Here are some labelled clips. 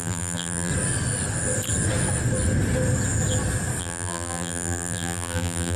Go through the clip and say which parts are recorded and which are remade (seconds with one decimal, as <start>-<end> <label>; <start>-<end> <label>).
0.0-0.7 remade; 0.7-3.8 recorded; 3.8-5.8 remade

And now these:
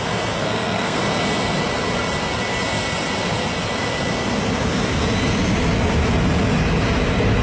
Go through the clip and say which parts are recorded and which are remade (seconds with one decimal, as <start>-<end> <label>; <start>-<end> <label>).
0.0-0.4 recorded; 0.4-1.0 remade; 1.0-7.4 recorded

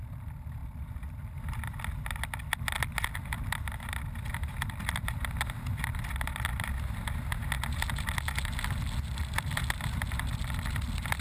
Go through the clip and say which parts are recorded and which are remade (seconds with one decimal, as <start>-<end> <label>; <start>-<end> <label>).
0.0-11.2 recorded

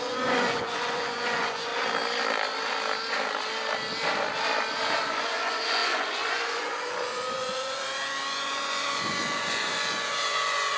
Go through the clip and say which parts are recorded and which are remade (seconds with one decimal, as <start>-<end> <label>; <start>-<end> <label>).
0.0-1.7 remade; 1.7-5.0 recorded; 5.0-10.8 remade